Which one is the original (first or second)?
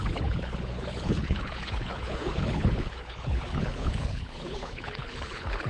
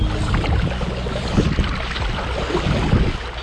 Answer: second